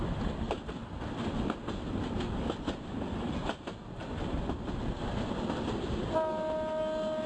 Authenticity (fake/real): real